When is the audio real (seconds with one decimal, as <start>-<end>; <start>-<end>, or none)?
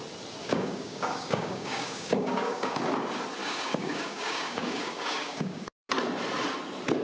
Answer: 0.0-0.4; 2.8-3.4; 5.9-7.0